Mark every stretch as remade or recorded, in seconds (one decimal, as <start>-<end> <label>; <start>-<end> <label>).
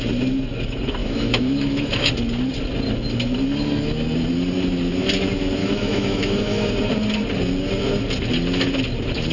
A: 0.0-1.0 recorded; 1.0-2.1 remade; 2.1-5.6 recorded; 5.6-6.7 remade; 6.7-9.3 recorded